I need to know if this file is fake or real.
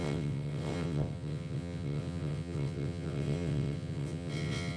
fake